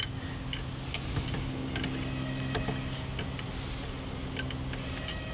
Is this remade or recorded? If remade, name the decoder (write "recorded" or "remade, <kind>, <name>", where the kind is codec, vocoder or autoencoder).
recorded